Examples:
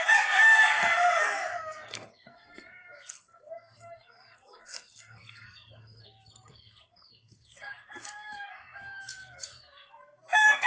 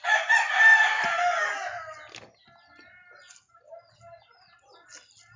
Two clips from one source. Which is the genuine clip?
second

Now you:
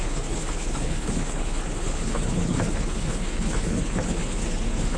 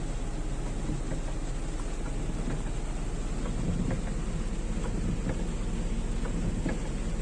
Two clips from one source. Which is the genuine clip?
second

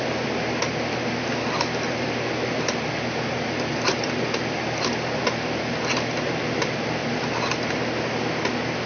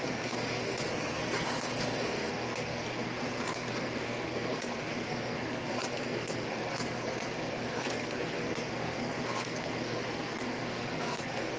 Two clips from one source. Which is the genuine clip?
first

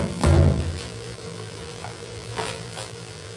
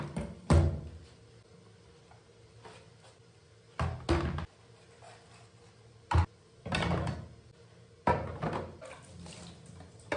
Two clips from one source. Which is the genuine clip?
second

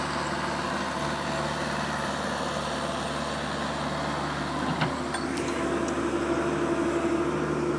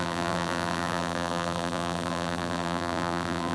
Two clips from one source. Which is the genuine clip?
first